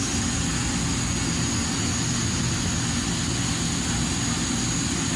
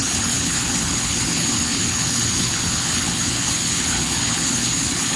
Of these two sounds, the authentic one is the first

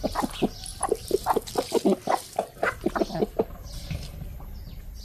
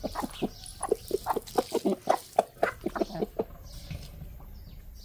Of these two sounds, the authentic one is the second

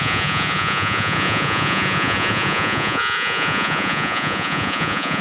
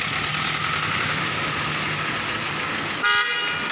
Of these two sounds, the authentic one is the second